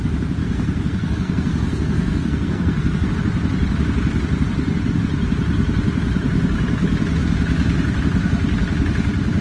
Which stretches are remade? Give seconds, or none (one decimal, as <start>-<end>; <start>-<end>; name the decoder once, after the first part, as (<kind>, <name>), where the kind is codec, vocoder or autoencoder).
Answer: 0.4-3.1 (codec, SNAC)